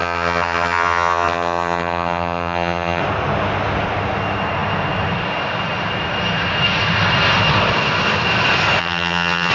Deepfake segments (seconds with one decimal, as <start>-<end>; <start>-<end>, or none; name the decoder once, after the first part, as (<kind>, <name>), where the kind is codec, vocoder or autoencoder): 0.0-3.0 (vocoder, HiFi-GAN); 8.8-9.5